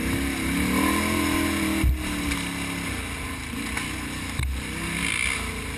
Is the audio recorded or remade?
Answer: recorded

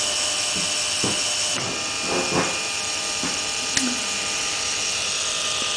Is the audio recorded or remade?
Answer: recorded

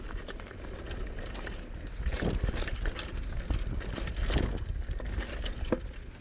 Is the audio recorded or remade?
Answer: recorded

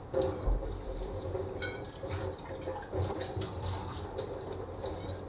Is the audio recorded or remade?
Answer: recorded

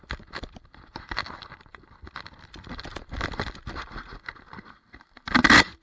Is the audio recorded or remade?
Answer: recorded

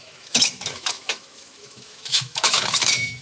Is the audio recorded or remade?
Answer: remade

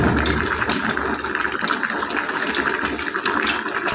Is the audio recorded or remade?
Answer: recorded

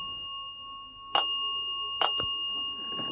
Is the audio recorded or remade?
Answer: recorded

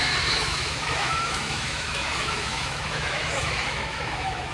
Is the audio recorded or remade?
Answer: remade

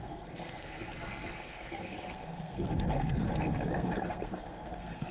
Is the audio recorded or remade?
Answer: remade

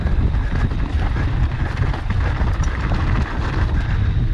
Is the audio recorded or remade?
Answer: recorded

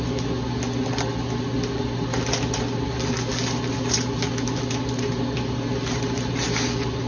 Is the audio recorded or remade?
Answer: recorded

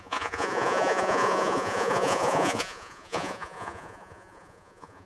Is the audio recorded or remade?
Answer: remade